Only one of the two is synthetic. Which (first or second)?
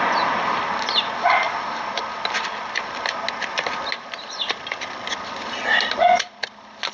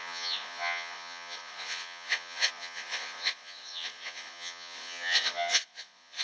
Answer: second